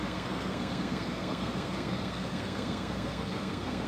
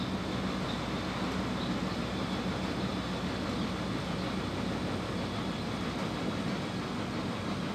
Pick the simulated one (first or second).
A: first